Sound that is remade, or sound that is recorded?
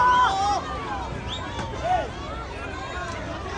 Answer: recorded